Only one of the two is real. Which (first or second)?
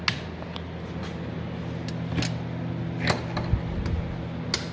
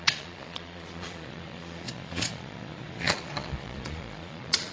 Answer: first